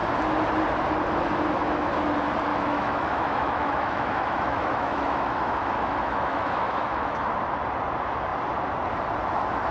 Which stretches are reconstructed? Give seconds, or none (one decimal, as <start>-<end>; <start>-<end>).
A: 2.5-7.3